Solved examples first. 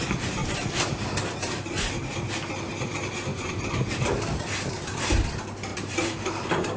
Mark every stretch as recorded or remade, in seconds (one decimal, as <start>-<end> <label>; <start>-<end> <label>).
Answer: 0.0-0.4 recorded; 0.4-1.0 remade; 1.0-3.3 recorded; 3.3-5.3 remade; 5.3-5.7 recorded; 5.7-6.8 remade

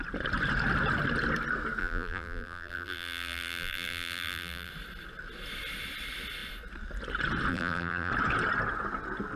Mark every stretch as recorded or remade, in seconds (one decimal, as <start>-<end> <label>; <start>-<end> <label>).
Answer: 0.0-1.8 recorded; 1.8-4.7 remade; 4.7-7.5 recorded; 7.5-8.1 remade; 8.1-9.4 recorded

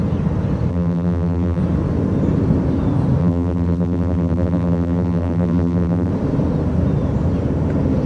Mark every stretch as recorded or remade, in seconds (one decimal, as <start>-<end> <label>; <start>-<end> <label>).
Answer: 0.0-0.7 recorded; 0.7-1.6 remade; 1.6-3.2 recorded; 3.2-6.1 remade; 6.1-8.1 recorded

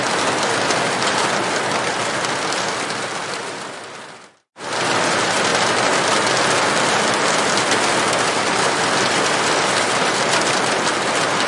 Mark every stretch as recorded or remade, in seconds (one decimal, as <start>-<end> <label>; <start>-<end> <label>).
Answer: 0.0-11.5 recorded